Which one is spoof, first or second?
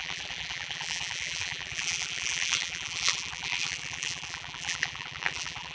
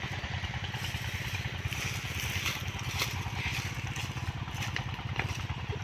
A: first